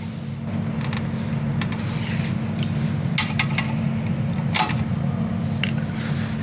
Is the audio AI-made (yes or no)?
no